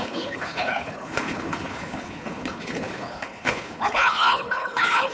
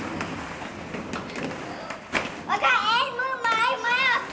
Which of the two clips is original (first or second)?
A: second